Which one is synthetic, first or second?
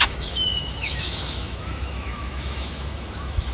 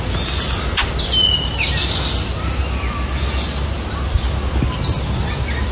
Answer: first